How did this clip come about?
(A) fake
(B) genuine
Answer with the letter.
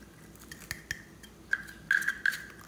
B